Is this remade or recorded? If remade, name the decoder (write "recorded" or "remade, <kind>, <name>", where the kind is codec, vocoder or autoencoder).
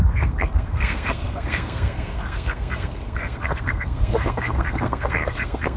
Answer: remade, codec, SNAC